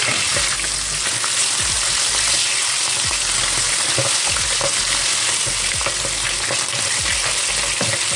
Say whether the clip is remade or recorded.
recorded